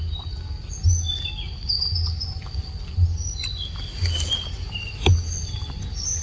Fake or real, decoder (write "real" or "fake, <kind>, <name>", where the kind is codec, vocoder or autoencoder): real